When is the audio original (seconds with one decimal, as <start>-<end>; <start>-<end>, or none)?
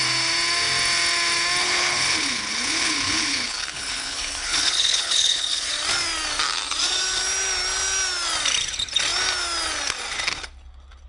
0.0-1.6; 5.7-11.1